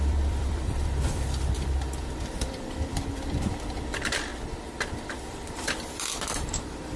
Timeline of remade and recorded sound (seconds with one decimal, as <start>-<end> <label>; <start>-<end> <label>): 0.0-4.3 remade; 4.3-5.0 recorded; 5.0-7.0 remade